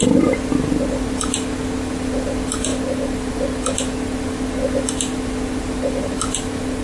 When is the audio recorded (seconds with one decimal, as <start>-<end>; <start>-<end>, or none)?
0.0-6.8